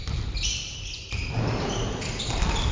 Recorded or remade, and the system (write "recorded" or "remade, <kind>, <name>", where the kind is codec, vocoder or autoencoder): recorded